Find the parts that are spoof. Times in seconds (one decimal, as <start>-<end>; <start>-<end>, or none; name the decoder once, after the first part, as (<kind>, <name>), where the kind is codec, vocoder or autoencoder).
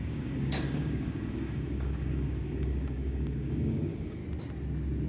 0.0-4.2 (codec, DAC)